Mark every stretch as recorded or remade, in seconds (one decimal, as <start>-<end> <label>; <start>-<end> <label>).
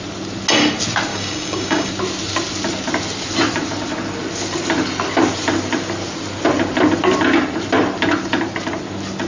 0.0-1.1 recorded; 1.1-1.9 remade; 1.9-9.3 recorded